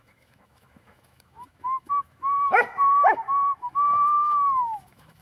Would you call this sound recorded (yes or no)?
no